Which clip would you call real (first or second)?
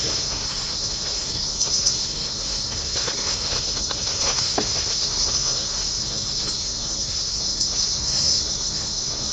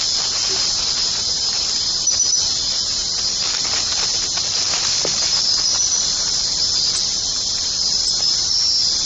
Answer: second